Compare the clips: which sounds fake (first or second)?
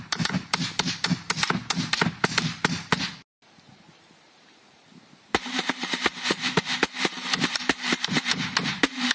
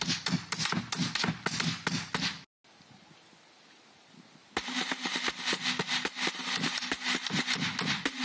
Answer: first